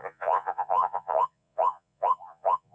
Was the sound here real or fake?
fake